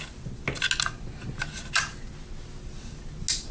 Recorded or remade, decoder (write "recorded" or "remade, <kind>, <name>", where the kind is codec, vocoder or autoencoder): recorded